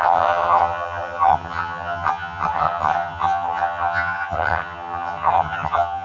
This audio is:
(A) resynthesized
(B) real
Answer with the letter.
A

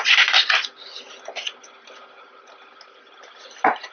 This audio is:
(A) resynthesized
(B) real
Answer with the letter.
B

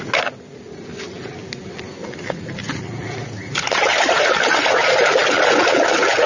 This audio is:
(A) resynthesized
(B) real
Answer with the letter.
B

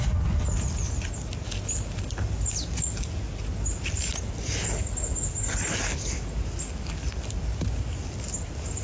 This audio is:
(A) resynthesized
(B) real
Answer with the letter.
B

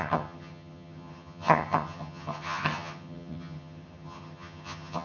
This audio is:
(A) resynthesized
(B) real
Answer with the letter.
A